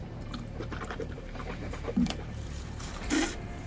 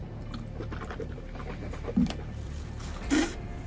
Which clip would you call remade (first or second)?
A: first